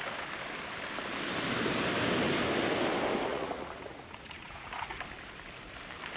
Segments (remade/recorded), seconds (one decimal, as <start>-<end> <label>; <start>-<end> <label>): 0.0-3.3 recorded; 3.3-5.0 remade; 5.0-6.2 recorded